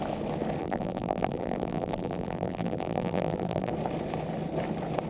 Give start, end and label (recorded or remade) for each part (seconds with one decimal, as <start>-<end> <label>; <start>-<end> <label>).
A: 0.0-0.6 recorded; 0.6-3.7 remade; 3.7-5.1 recorded